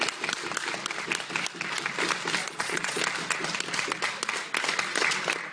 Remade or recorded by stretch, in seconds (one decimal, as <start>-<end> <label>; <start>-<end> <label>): 0.0-2.4 recorded; 2.4-3.0 remade; 3.0-5.5 recorded